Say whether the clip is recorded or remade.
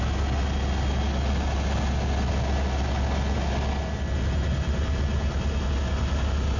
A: recorded